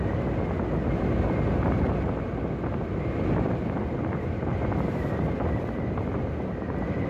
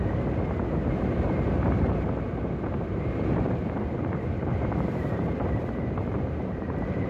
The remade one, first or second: second